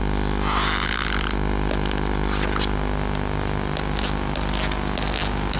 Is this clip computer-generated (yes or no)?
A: no